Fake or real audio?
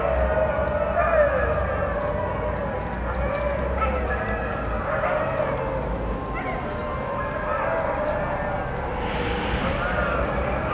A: real